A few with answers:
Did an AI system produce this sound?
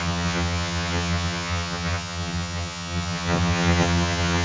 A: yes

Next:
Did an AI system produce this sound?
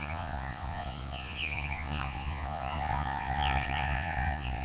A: yes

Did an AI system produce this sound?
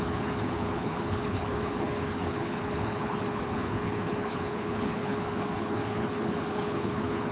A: yes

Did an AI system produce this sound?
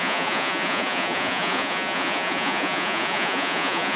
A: yes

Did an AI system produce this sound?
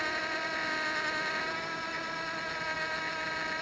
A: no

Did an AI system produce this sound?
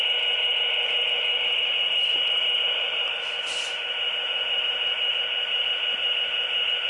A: no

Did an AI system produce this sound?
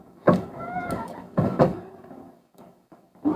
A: yes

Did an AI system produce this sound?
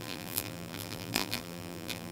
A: yes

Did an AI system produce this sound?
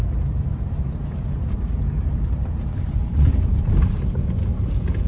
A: no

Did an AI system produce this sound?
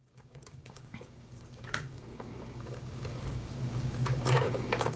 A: yes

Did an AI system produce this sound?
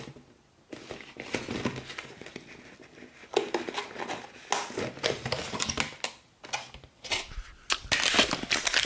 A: no